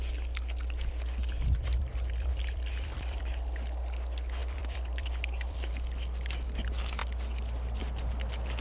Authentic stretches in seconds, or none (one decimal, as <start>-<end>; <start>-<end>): 0.0-1.2; 3.2-4.4; 5.7-8.6